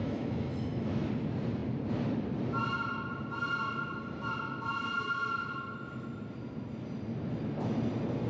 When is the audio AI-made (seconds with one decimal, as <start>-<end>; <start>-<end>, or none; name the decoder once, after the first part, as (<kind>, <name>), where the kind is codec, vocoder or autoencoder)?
0.0-1.1 (autoencoder, DAC-VAE)